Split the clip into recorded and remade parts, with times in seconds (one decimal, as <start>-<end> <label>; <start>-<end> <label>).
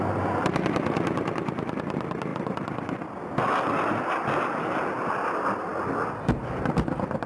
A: 0.0-7.3 recorded